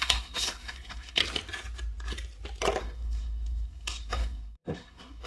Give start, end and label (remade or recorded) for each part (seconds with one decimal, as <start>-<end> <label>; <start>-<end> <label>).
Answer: 0.0-1.2 remade; 1.2-2.8 recorded; 2.8-5.3 remade